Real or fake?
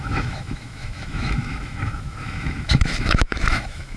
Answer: fake